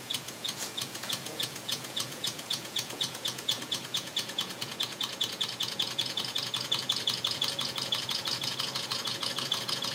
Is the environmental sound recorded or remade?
remade